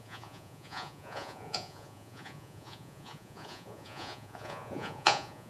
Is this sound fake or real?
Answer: fake